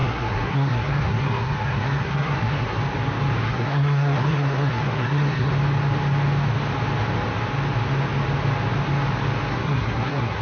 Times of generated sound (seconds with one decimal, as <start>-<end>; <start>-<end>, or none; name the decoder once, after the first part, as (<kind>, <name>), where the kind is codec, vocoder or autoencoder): 0.0-2.8 (codec, SNAC); 3.4-5.5; 9.5-10.4